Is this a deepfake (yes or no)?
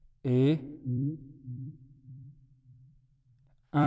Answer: yes